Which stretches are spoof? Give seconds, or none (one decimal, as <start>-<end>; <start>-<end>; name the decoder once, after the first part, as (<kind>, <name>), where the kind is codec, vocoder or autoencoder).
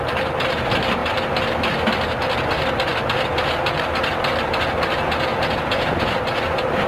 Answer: 5.3-6.2 (vocoder, Vocos)